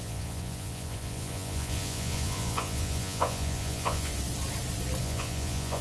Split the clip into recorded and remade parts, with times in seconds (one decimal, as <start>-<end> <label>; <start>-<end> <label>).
0.0-4.1 remade; 4.1-5.0 recorded; 5.0-5.8 remade